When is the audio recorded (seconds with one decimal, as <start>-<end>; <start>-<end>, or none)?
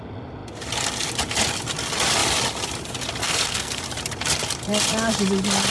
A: 0.0-3.2; 3.8-5.7